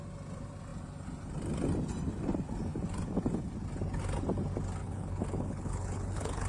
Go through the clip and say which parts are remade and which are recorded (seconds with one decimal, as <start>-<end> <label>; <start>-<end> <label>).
0.0-4.8 recorded; 4.8-6.5 remade